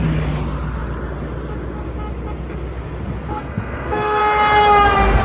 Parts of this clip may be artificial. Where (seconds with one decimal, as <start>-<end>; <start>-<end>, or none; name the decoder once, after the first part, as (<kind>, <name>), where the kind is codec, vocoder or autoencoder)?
3.3-4.2 (codec, SNAC)